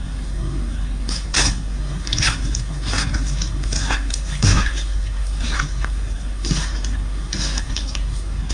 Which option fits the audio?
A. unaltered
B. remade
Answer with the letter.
B